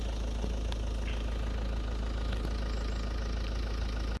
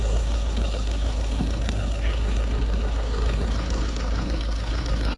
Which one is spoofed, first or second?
second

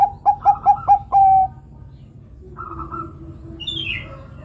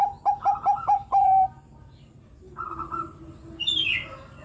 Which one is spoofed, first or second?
second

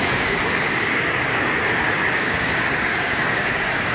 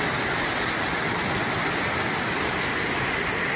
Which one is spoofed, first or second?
first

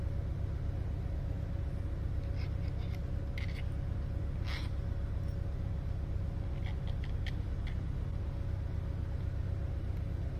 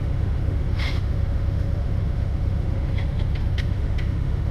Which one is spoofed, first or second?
second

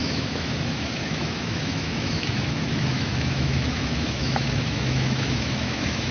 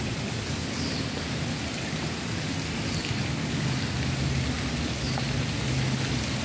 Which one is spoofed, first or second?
first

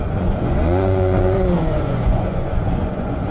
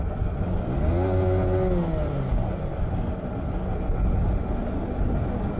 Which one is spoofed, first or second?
first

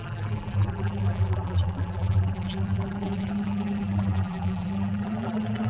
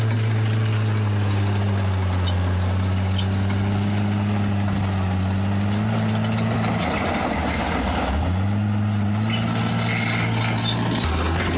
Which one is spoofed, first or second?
first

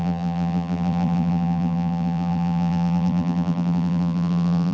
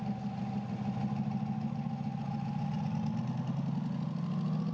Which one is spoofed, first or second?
first